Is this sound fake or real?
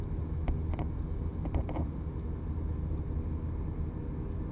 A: real